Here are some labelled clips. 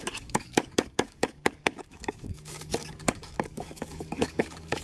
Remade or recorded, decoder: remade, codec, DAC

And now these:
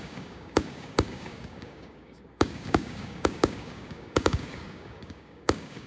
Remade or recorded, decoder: remade, codec, DAC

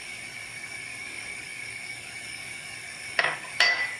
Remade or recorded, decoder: remade, codec, DAC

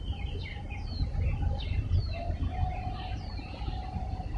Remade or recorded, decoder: recorded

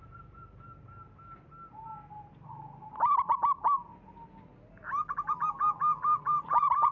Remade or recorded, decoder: recorded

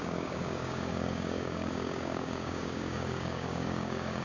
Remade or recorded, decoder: remade, codec, DAC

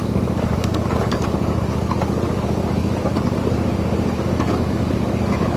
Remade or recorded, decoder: remade, codec, DAC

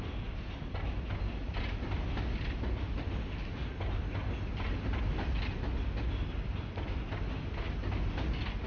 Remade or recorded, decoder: recorded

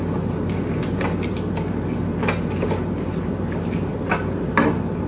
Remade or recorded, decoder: recorded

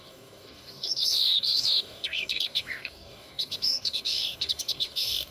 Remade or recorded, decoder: remade, codec, DAC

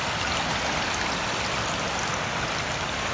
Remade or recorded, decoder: recorded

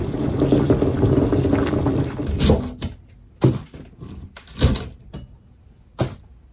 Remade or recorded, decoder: recorded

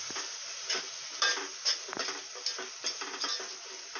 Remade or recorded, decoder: recorded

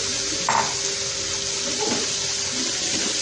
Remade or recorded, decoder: recorded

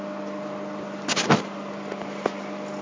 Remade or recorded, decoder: recorded